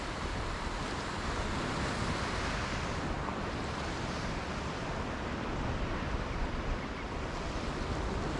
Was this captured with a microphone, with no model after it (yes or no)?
yes